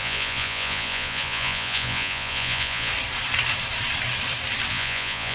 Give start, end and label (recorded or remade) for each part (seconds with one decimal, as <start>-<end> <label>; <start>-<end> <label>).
0.0-2.9 remade; 2.9-4.7 recorded; 4.7-5.3 remade